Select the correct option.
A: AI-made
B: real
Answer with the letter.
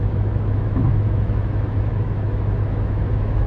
A